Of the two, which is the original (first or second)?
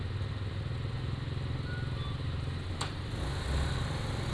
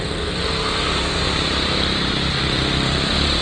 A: first